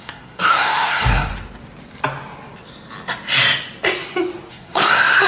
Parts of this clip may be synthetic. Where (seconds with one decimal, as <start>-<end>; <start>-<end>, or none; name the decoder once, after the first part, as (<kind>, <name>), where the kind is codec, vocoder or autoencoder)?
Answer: 0.0-1.3 (codec, SNAC); 4.5-5.3